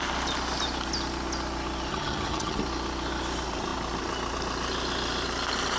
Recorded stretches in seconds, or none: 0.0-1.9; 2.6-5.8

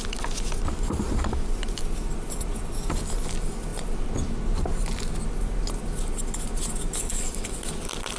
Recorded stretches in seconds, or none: 0.0-8.2

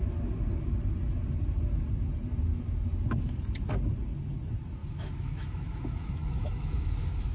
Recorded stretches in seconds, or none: 0.0-4.8

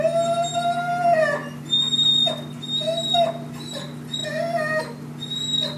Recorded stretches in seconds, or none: 0.0-5.8